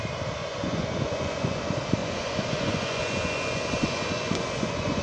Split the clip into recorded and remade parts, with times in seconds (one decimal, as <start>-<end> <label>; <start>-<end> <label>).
0.0-0.4 recorded; 0.4-1.6 remade; 1.6-2.0 recorded; 2.0-5.0 remade